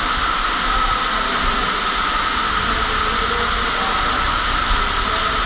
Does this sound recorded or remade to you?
recorded